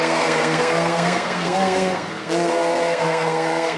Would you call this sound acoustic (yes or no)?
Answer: no